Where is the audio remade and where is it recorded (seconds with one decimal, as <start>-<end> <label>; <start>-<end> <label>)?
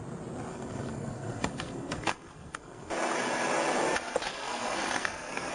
0.0-0.5 recorded; 0.5-2.9 remade; 2.9-4.3 recorded; 4.3-5.5 remade